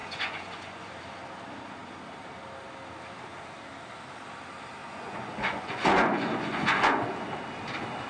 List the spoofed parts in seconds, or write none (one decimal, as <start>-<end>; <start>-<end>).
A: 0.0-0.9; 4.8-7.0

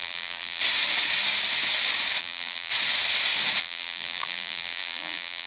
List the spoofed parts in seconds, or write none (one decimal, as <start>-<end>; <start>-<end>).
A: 0.0-0.6; 2.2-2.7; 3.6-5.5

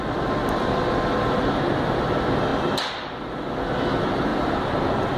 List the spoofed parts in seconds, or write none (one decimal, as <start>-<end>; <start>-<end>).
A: 0.4-1.0; 4.3-5.2

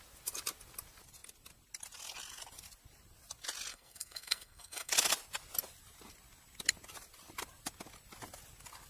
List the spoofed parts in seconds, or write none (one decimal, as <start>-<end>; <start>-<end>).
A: 3.7-4.9

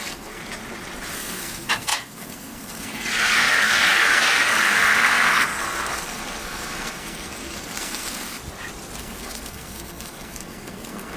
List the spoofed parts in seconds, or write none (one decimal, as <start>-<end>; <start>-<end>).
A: 0.0-0.4; 1.1-8.4; 9.0-11.2

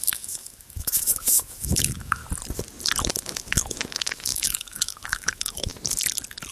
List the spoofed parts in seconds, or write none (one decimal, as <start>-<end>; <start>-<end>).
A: 0.0-2.2; 3.0-5.7